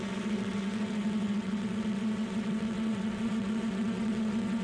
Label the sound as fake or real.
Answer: fake